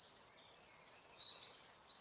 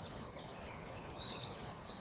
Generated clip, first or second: second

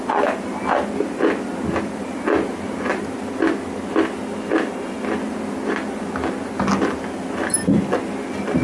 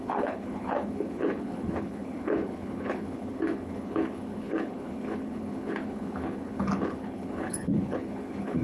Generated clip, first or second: second